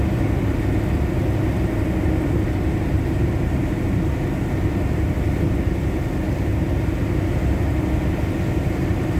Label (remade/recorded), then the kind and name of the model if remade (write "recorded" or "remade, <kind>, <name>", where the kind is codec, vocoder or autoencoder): recorded